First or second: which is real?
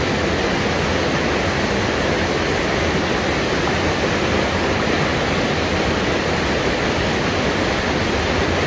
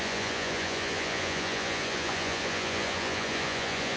first